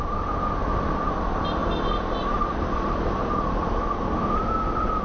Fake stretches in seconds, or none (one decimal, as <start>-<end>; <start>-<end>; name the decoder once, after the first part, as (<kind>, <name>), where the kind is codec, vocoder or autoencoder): none